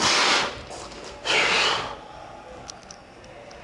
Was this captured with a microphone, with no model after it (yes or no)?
yes